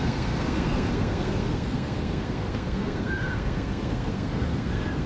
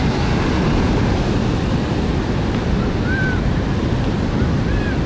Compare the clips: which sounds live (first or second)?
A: second